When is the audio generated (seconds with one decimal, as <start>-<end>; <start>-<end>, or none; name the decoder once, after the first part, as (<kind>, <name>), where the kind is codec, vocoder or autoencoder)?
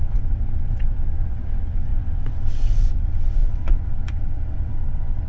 0.0-5.3 (vocoder, WaveNeXt)